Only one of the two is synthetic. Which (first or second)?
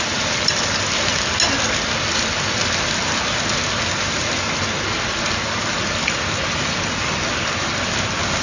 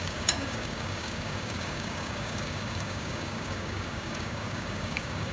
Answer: second